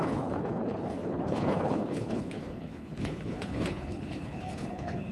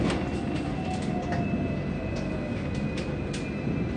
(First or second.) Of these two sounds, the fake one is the first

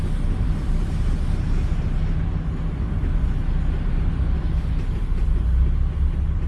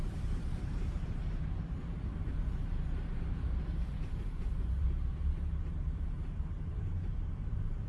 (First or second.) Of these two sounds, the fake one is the second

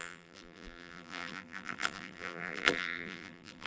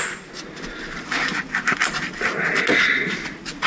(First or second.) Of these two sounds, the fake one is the first